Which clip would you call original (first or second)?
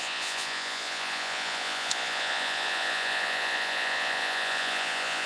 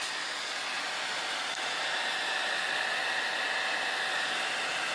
second